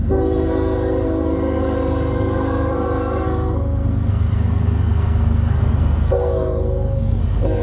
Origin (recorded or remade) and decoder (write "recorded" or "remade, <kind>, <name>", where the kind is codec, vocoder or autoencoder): remade, codec, SNAC